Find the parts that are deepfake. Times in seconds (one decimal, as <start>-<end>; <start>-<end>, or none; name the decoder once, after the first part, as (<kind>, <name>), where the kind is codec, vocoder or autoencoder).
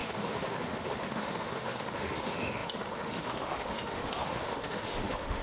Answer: 0.0-5.4 (autoencoder, DAC-VAE)